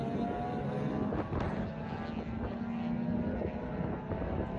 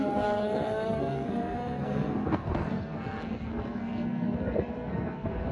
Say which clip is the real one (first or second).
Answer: first